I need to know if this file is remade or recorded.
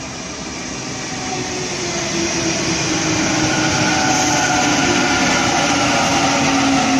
recorded